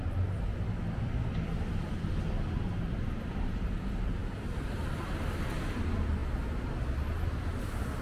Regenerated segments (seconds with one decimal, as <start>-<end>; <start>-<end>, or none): 0.0-6.2; 7.5-8.0